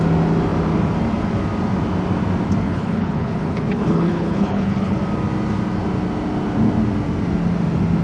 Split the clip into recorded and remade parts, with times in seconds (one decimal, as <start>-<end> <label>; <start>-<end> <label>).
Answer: 0.0-2.6 recorded; 2.6-5.0 remade; 5.0-8.0 recorded